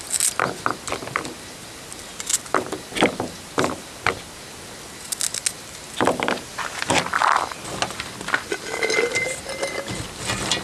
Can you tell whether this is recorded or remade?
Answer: recorded